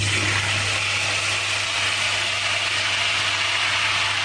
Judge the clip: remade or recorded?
recorded